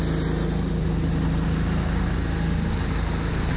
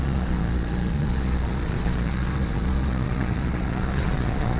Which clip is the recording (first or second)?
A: first